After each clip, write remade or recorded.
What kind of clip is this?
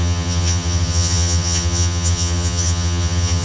remade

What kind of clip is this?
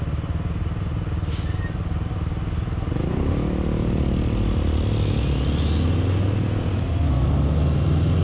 recorded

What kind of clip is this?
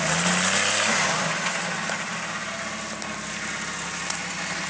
recorded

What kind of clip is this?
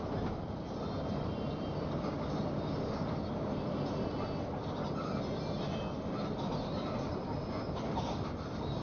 recorded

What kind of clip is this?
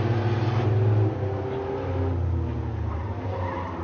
recorded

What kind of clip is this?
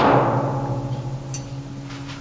recorded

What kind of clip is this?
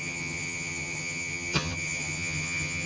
remade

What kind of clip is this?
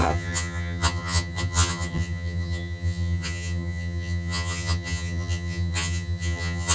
remade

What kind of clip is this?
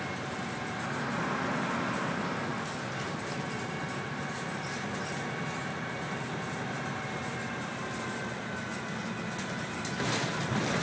recorded